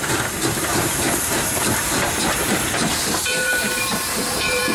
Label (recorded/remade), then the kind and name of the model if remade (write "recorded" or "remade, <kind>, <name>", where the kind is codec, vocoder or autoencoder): remade, vocoder, BigVGAN v2